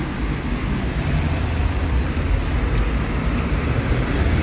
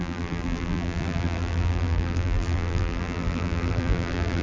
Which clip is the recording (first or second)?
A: first